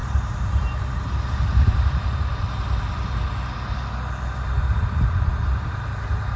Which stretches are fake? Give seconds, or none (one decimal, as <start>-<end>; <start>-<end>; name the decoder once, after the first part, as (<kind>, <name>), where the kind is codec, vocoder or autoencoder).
0.0-2.0 (vocoder, BigVGAN v2)